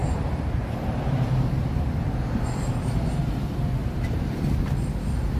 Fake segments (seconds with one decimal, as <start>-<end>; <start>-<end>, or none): 0.0-3.2; 3.8-4.6